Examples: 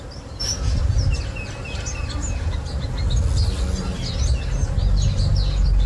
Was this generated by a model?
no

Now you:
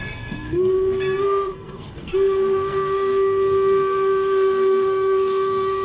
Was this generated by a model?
yes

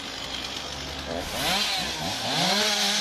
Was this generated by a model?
no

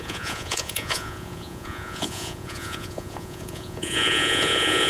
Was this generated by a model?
yes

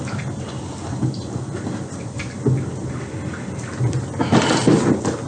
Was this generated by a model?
no